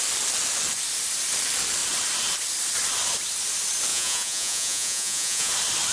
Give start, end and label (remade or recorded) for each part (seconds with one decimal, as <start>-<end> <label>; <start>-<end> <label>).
0.0-3.9 recorded; 3.9-5.5 remade; 5.5-5.9 recorded